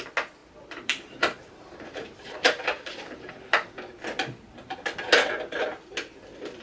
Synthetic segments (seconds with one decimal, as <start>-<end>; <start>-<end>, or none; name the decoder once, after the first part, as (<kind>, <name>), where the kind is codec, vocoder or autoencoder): 0.4-3.3 (vocoder, BigVGAN v2)